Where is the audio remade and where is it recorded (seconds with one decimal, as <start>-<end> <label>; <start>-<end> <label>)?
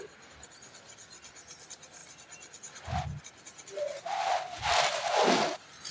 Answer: 0.0-5.9 recorded